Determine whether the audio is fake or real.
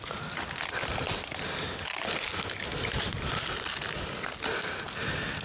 real